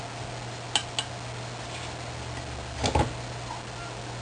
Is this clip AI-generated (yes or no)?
no